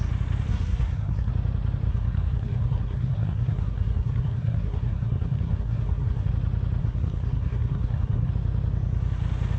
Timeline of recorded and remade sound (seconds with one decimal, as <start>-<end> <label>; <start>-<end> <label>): 0.0-0.5 recorded; 0.5-1.3 remade; 1.3-1.9 recorded; 1.9-6.3 remade; 6.3-6.8 recorded; 6.8-8.3 remade; 8.3-9.6 recorded